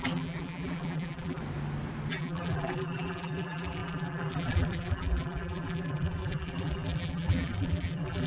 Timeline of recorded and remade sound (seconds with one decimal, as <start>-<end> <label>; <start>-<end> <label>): 0.0-1.4 remade; 1.4-2.1 recorded; 2.1-8.3 remade